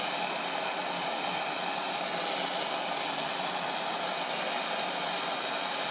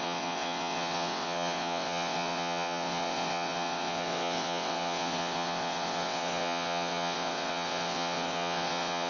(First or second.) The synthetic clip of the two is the second